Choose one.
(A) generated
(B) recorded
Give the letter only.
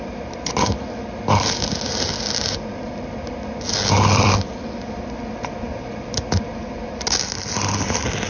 B